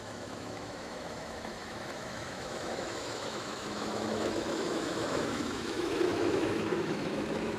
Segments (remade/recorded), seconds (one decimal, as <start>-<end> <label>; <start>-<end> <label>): 0.0-7.6 remade